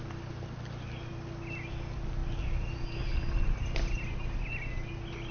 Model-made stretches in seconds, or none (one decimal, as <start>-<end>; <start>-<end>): none